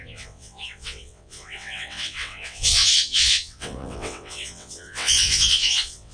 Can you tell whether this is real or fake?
fake